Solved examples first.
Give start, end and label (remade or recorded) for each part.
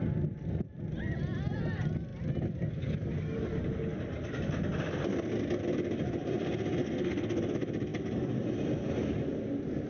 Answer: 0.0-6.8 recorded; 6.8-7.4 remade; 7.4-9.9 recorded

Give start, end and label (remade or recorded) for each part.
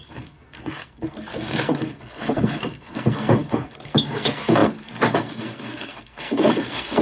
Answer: 0.0-7.0 remade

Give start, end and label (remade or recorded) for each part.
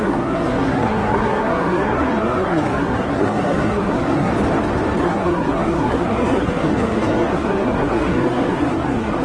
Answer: 0.0-4.3 remade; 4.3-5.0 recorded; 5.0-9.2 remade